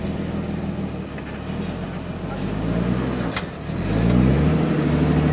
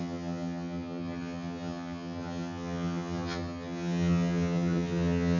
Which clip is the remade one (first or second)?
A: second